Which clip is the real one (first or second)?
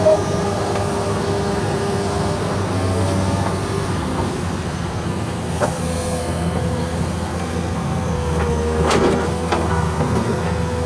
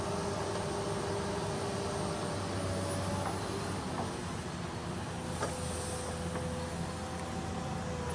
second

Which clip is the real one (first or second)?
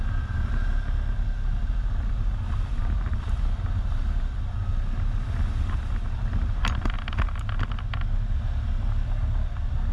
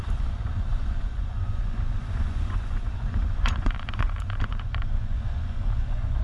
first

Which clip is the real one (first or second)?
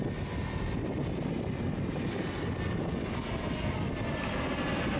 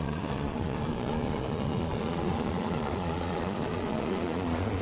first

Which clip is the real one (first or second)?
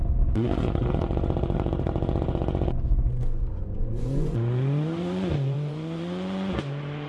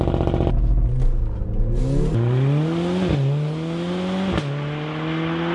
second